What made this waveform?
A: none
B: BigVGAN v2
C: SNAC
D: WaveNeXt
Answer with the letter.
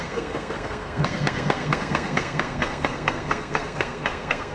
C